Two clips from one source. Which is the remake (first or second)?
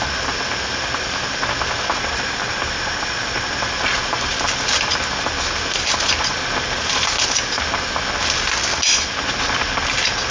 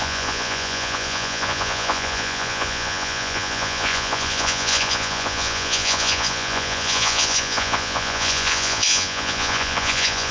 second